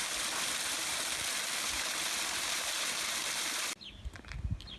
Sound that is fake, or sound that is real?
real